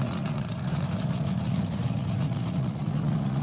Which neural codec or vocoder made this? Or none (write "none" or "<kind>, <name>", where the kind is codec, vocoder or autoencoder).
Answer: vocoder, Vocos